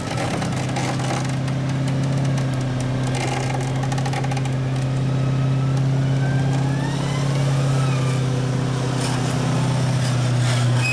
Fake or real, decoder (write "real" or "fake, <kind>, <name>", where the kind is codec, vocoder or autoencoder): real